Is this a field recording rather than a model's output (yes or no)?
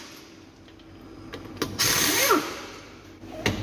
yes